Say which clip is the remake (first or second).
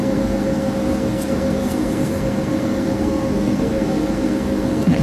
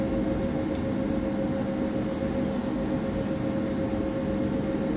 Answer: first